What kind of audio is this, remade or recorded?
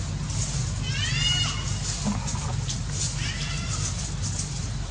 recorded